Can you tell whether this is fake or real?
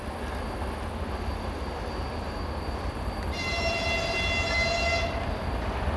real